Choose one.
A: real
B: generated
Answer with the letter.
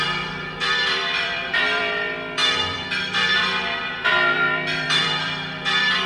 B